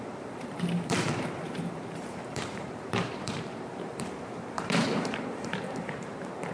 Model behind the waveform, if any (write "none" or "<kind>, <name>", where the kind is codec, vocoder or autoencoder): vocoder, BigVGAN v2